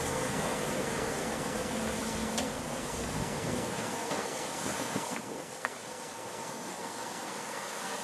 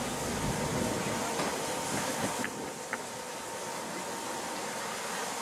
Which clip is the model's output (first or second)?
first